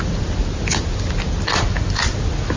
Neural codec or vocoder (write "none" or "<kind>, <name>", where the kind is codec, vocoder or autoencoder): none